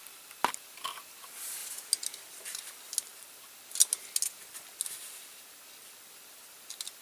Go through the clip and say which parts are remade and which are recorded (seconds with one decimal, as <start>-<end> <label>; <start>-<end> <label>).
0.0-7.0 recorded